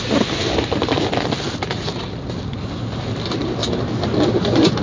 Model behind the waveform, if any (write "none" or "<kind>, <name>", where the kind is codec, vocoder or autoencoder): none